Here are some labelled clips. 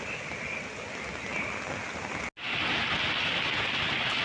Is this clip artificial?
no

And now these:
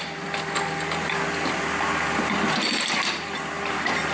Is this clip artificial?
no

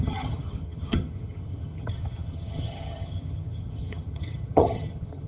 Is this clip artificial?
yes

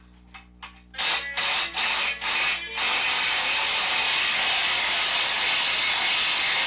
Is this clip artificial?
no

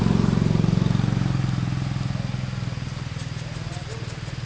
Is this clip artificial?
no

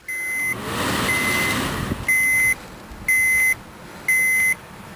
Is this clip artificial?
no